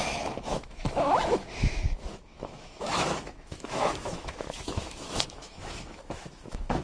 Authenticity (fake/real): fake